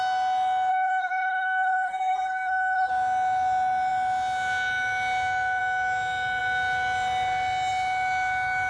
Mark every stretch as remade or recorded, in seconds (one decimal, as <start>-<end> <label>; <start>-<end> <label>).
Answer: 0.0-0.7 recorded; 0.7-2.9 remade; 2.9-8.7 recorded